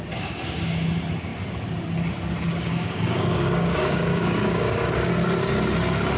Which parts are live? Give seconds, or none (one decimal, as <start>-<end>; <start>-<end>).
0.0-2.5; 5.1-6.2